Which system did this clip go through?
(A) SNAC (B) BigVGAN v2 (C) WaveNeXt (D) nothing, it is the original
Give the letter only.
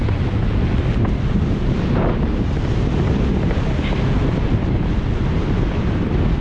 D